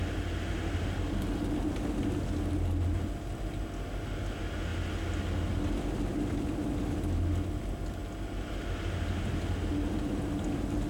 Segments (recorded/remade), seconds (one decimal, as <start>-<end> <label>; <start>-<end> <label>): 0.0-10.9 recorded